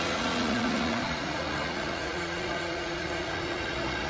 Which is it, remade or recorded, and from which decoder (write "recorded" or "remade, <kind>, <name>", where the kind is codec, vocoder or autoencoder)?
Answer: remade, vocoder, Vocos